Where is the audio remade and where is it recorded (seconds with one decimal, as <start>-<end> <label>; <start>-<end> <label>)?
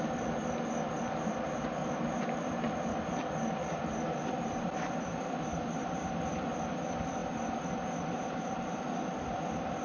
0.0-1.8 recorded; 1.8-2.5 remade; 2.5-9.8 recorded